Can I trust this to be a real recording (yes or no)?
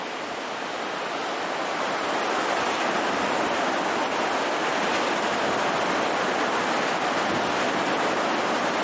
yes